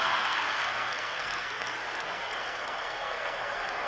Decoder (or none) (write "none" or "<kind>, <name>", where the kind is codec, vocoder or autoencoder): codec, SNAC